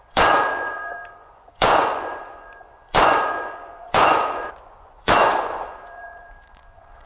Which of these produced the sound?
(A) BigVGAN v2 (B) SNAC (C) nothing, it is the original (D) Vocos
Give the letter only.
D